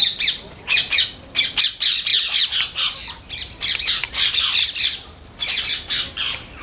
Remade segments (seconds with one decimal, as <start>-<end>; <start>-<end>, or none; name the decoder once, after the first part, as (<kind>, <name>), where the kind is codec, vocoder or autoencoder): 0.0-6.6 (vocoder, BigVGAN v2)